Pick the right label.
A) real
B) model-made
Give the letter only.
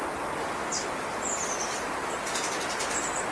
A